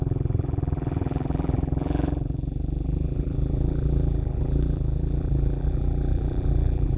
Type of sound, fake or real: fake